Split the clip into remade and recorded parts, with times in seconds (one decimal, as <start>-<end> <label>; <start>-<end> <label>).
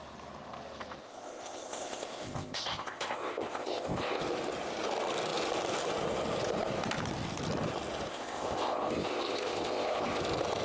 0.0-1.0 recorded; 1.0-4.2 remade; 4.2-8.1 recorded; 8.1-10.2 remade; 10.2-10.6 recorded